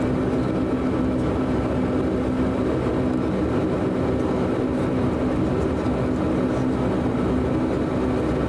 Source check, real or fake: real